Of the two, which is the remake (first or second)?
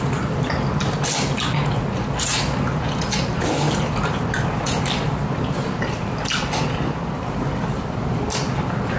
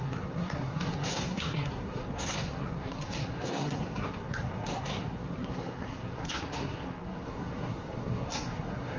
second